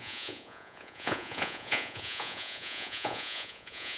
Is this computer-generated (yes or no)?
yes